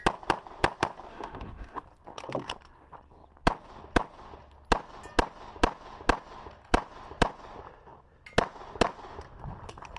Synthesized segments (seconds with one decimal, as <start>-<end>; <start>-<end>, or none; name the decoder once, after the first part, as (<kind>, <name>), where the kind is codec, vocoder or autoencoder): 1.1-1.8 (autoencoder, DAC-VAE)